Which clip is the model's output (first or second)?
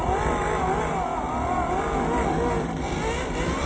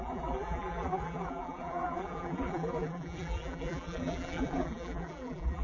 second